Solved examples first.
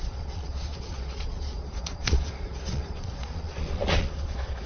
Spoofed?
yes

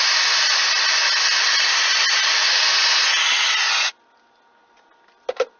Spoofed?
no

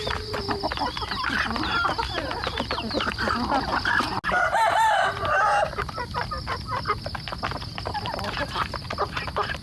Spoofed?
no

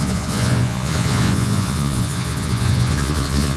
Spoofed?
yes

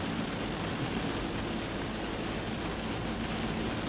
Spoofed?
no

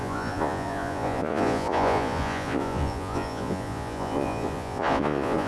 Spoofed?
yes